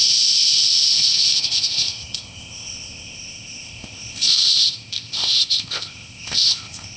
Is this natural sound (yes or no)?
no